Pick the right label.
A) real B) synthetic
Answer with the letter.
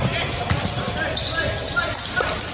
A